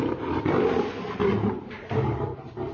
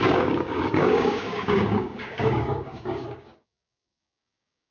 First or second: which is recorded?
first